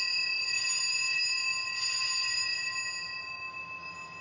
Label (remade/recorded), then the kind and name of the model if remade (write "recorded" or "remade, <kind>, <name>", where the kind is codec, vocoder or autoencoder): recorded